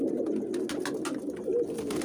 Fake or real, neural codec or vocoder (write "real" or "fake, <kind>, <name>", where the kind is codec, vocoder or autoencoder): real